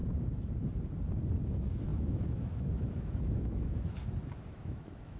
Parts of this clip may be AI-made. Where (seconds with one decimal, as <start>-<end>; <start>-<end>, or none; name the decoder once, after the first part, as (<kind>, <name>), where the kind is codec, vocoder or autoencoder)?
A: 1.5-4.0 (autoencoder, DAC-VAE); 4.5-5.2